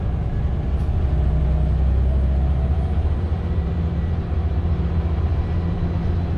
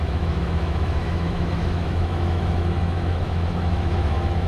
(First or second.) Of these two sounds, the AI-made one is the second